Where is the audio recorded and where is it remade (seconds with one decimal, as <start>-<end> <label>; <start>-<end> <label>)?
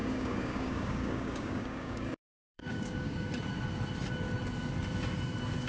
0.0-3.3 remade; 3.3-5.7 recorded